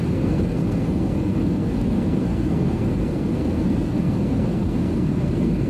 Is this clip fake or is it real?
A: fake